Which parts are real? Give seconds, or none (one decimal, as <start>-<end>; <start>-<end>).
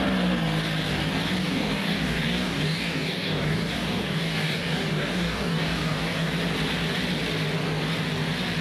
0.0-1.4; 6.3-8.6